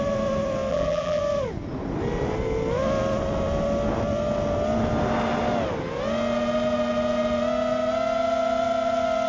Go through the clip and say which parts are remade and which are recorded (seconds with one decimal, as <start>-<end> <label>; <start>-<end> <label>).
0.0-0.7 recorded; 0.7-1.2 remade; 1.2-9.3 recorded